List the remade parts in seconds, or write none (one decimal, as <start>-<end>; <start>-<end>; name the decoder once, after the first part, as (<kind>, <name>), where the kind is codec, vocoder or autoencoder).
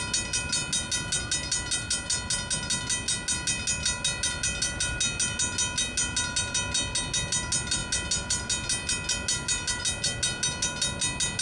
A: none